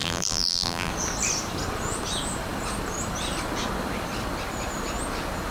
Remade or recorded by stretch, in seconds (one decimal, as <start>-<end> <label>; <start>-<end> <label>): 0.0-0.9 remade; 0.9-5.5 recorded